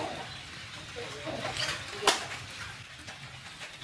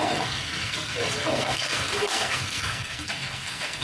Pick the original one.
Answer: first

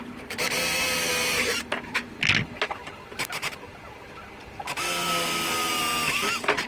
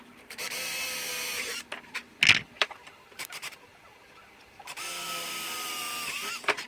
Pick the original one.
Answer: first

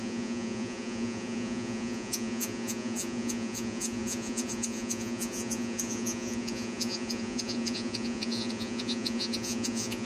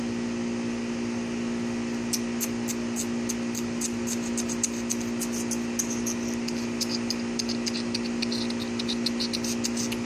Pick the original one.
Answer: second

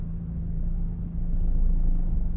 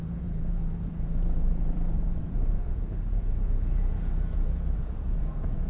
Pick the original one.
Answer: first